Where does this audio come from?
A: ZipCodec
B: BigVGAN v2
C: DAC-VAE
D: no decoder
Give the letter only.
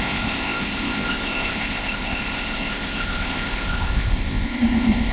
A